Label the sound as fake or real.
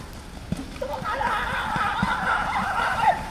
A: real